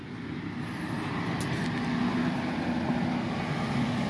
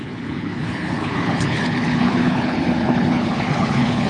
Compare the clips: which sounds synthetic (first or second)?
second